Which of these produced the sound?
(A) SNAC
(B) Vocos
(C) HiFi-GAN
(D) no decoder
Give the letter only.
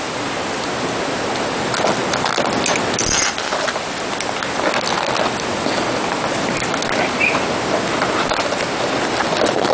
D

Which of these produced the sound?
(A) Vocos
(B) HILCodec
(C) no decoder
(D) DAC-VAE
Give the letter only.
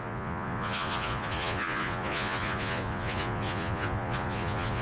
A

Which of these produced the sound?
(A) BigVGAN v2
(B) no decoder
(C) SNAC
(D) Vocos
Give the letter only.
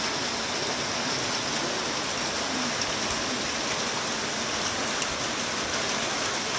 B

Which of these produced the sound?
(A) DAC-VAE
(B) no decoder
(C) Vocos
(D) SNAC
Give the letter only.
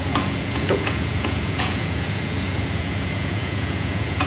C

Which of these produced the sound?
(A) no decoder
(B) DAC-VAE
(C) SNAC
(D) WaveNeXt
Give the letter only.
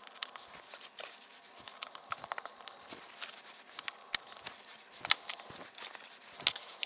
A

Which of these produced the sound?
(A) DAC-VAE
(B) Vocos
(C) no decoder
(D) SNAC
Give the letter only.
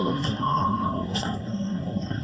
D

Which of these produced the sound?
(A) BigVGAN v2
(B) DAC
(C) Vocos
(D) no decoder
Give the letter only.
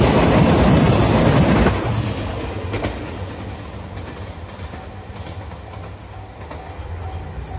D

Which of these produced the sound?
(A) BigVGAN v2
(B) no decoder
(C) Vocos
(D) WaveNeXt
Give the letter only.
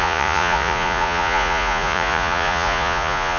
C